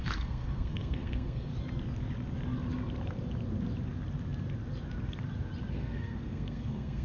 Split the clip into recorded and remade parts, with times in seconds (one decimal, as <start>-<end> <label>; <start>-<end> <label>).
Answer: 0.0-1.5 remade; 1.5-5.7 recorded; 5.7-7.0 remade